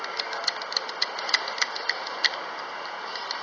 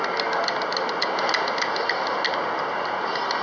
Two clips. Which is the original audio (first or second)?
second